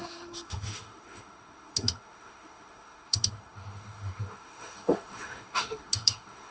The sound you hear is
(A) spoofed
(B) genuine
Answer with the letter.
A